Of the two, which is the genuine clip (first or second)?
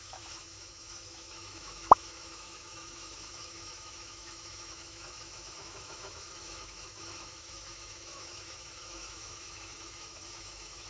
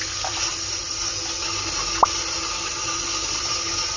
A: second